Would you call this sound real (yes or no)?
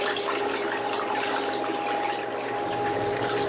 yes